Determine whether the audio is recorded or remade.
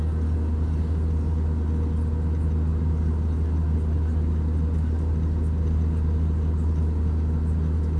recorded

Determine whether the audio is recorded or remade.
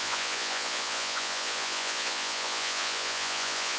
remade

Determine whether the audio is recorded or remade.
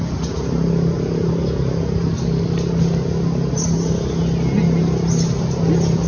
recorded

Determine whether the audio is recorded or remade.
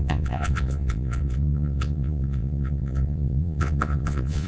remade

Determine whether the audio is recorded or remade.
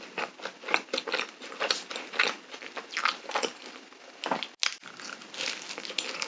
recorded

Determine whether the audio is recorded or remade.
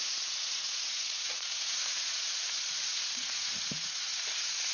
remade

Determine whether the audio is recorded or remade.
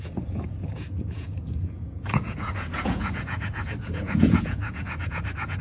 remade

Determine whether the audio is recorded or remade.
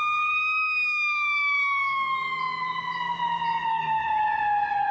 recorded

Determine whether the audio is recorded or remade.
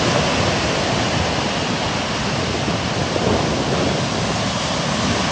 recorded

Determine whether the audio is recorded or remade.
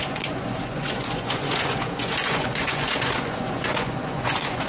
remade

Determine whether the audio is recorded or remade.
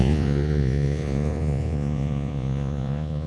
remade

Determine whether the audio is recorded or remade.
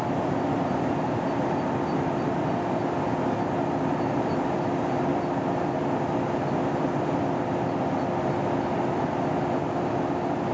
recorded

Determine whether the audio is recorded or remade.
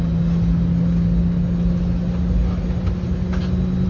recorded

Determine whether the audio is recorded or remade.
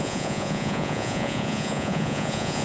remade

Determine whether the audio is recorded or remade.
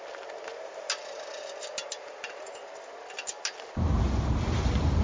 recorded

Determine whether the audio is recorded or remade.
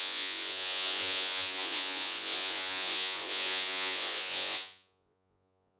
remade